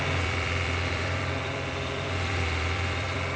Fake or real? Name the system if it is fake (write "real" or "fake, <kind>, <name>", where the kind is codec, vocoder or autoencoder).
fake, vocoder, BigVGAN v2